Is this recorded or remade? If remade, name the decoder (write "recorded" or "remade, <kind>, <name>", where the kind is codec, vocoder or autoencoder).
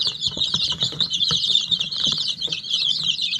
remade, vocoder, Vocos